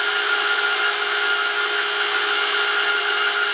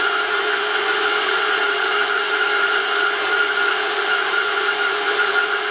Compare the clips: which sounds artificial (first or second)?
second